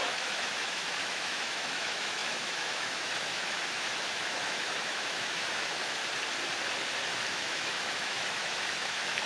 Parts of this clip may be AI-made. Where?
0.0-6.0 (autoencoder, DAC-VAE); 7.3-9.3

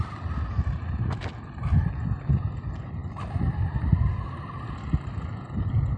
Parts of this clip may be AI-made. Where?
none

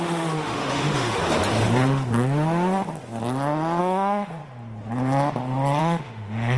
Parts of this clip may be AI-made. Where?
0.0-1.2 (autoencoder, DAC-VAE); 3.8-4.4; 5.8-6.6

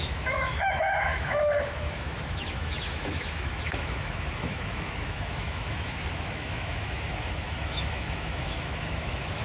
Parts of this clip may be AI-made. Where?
0.0-9.4 (autoencoder, DAC-VAE)

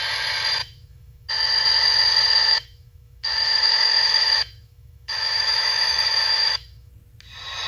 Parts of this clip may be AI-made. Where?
0.6-1.3 (autoencoder, DAC-VAE); 2.3-6.9